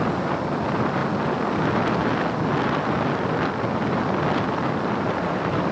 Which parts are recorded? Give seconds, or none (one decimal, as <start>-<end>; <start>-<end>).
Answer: 1.0-4.4